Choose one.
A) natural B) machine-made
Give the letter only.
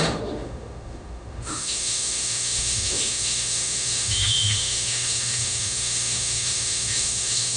B